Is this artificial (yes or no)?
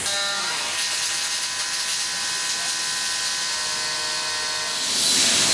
no